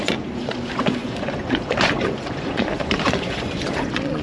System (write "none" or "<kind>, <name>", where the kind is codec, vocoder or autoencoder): vocoder, Vocos